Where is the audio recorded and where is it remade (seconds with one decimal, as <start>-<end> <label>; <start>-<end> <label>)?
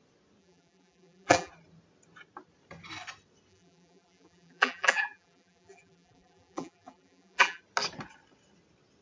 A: 0.0-0.4 recorded; 0.4-1.5 remade; 1.5-3.5 recorded; 3.5-7.6 remade; 7.6-9.0 recorded